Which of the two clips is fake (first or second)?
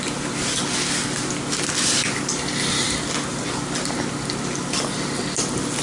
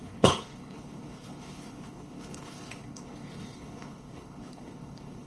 second